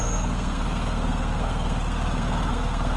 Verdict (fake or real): fake